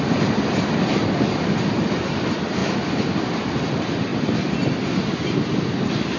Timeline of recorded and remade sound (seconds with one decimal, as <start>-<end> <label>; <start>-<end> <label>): 0.0-0.9 recorded; 0.9-1.8 remade; 1.8-2.6 recorded; 2.6-3.5 remade; 3.5-4.1 recorded; 4.1-5.6 remade; 5.6-6.2 recorded